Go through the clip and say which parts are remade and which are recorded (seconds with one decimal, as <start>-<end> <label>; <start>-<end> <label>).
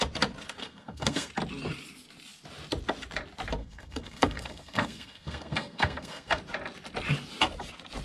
0.0-0.6 recorded; 0.6-1.3 remade; 1.3-3.6 recorded; 3.6-6.4 remade; 6.4-8.0 recorded